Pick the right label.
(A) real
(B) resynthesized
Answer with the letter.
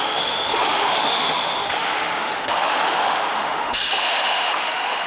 B